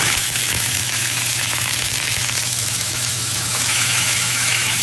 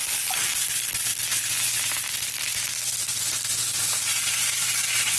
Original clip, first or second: second